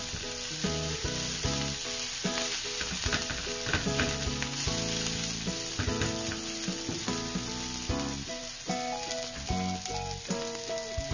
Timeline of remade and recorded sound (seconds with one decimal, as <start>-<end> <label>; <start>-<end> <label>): 0.0-11.1 recorded